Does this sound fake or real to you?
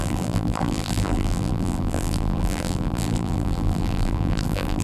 fake